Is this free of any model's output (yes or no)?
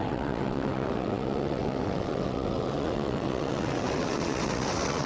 no